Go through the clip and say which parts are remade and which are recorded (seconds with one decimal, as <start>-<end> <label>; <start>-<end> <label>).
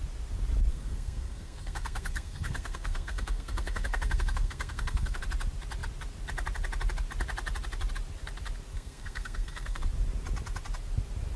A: 0.0-0.7 recorded; 0.7-5.2 remade; 5.2-8.7 recorded; 8.7-9.8 remade; 9.8-11.4 recorded